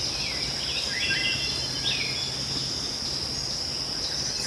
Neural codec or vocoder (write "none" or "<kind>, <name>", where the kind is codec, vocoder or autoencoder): none